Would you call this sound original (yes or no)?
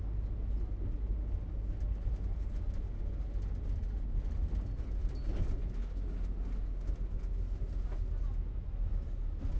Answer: yes